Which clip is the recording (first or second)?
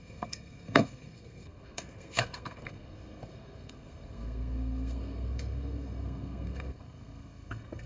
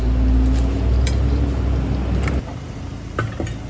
second